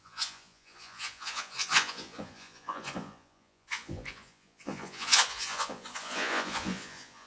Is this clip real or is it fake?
fake